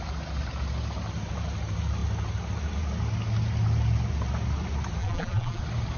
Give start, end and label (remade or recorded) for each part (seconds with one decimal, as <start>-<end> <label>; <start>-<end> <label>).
0.0-5.0 recorded; 5.0-5.6 remade; 5.6-6.0 recorded